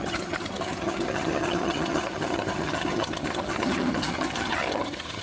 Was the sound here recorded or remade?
remade